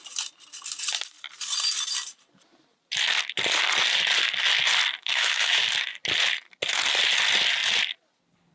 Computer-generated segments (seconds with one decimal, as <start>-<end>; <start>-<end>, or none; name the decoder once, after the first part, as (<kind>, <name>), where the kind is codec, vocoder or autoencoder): 5.0-5.6 (autoencoder, DAC-VAE)